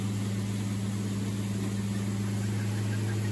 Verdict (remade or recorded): recorded